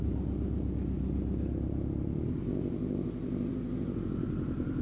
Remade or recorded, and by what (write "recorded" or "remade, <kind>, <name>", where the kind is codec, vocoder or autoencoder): remade, vocoder, BigVGAN v2